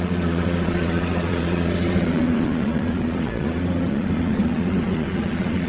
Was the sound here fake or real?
fake